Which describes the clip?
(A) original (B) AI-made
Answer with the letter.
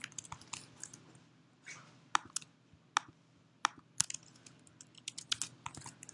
A